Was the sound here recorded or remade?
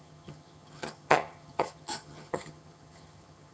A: remade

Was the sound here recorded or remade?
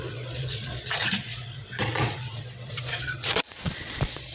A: remade